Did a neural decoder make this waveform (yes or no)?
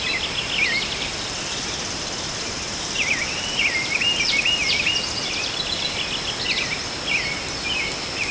no